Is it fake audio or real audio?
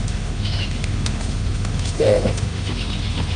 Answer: fake